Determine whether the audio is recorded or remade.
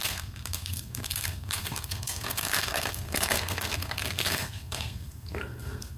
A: remade